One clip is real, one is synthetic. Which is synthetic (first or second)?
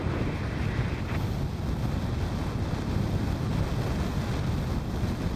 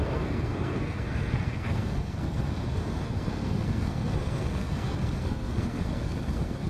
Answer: second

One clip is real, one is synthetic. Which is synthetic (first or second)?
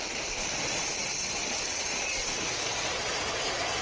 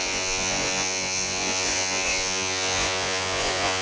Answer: second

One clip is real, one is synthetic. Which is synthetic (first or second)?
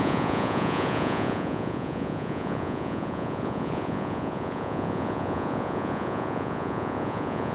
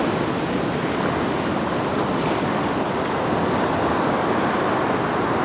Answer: first